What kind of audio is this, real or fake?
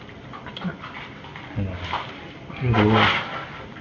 real